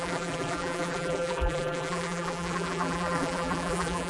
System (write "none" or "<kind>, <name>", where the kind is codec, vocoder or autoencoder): vocoder, BigVGAN v2